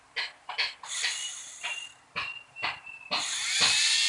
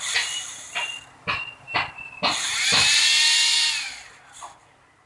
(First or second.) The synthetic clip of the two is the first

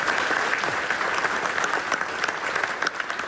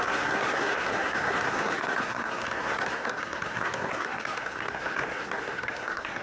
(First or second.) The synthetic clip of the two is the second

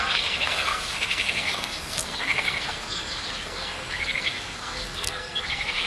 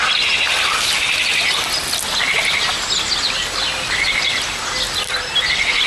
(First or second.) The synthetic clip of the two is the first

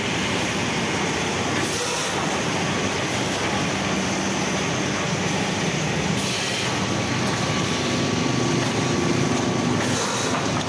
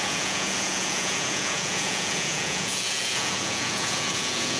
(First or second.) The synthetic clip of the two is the second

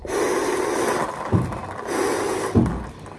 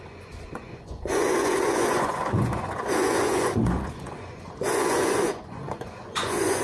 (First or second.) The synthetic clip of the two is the second